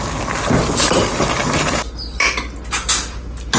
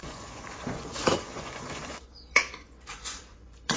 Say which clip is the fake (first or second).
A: second